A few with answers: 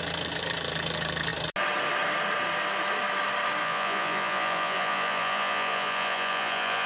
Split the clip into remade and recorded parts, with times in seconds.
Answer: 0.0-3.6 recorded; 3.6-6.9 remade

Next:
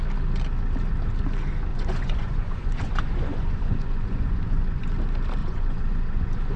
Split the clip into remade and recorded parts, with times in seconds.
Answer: 0.0-1.7 recorded; 1.7-4.9 remade; 4.9-5.4 recorded; 5.4-6.6 remade

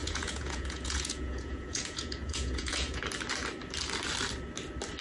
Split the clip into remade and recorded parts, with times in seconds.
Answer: 0.0-3.0 remade; 3.0-5.0 recorded

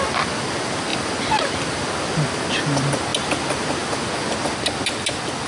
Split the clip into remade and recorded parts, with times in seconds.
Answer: 0.0-0.9 recorded; 0.9-1.5 remade; 1.5-5.5 recorded

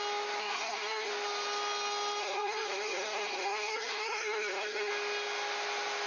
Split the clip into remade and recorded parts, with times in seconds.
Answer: 0.0-0.4 recorded; 0.4-1.1 remade; 1.1-2.2 recorded; 2.2-4.9 remade; 4.9-6.1 recorded

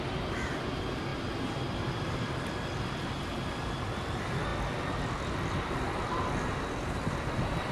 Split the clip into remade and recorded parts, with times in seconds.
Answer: 0.0-7.7 recorded

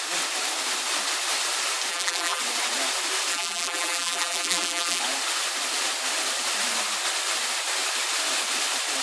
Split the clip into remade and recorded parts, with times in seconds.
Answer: 0.0-1.9 recorded; 1.9-2.4 remade; 2.4-3.3 recorded; 3.3-5.0 remade; 5.0-9.0 recorded

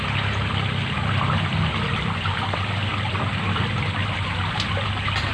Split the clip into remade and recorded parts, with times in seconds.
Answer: 0.0-5.3 recorded